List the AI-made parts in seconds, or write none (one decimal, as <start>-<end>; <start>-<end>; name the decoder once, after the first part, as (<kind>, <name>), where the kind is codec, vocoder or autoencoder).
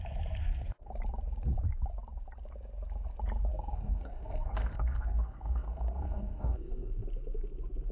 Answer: 0.4-0.9 (codec, SNAC); 3.5-6.9